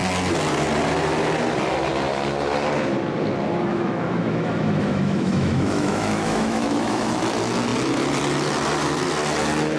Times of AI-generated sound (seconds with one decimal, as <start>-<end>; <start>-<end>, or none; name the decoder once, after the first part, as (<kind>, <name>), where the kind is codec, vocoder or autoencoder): 3.7-7.2 (autoencoder, DAC-VAE)